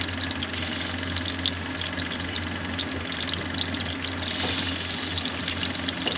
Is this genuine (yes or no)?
yes